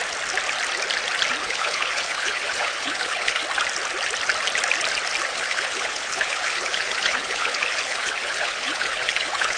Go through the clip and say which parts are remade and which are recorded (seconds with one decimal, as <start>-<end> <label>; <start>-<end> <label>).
0.0-1.4 recorded; 1.4-3.4 remade; 3.4-5.3 recorded; 5.3-9.6 remade